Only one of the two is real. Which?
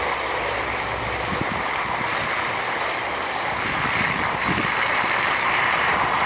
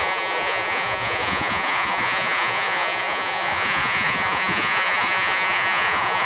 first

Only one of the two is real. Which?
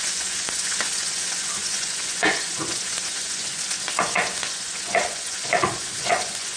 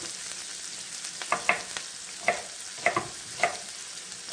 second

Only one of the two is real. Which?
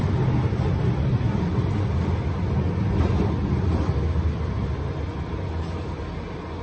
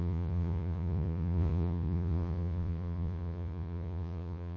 first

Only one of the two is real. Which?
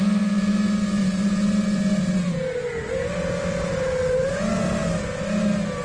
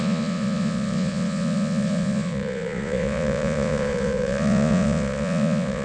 first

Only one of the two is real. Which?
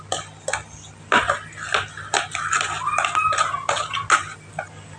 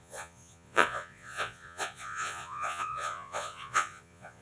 first